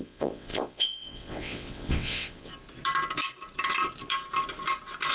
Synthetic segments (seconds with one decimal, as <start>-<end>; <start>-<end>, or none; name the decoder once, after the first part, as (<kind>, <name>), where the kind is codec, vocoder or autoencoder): 0.0-2.5 (vocoder, WaveNeXt)

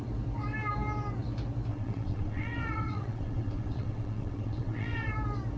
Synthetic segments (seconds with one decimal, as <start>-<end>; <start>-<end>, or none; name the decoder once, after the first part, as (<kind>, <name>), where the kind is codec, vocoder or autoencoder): 1.7-5.1 (vocoder, WaveNeXt)

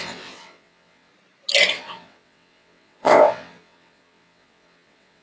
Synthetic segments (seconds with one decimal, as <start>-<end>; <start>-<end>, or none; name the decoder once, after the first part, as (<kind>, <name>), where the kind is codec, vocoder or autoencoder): 0.0-1.1 (vocoder, WaveNeXt); 1.7-5.2

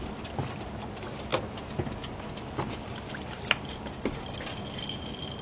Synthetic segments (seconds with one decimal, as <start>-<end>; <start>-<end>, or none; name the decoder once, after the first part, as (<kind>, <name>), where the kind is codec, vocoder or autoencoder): none

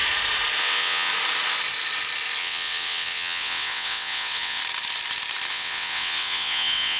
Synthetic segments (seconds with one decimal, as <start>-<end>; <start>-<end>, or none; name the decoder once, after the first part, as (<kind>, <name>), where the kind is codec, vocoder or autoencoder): 0.6-1.1 (vocoder, WaveNeXt); 2.4-4.6; 5.5-7.0

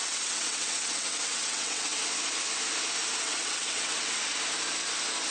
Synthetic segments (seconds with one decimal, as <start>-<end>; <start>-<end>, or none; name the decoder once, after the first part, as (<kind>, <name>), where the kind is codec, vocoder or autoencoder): 0.0-1.9 (vocoder, WaveNeXt); 3.2-4.3

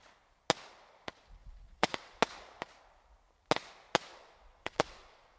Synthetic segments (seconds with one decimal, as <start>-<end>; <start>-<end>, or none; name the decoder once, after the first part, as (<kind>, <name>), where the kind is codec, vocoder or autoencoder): 1.4-2.2 (vocoder, WaveNeXt); 4.1-5.4

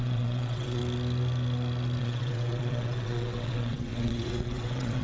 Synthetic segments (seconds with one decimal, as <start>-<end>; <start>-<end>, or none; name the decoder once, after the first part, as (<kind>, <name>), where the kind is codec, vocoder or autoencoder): 0.0-0.8 (vocoder, WaveNeXt); 2.0-5.0